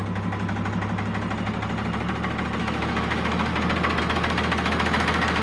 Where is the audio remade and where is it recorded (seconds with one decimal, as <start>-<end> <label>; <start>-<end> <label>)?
0.0-2.6 recorded; 2.6-3.5 remade; 3.5-4.0 recorded; 4.0-5.4 remade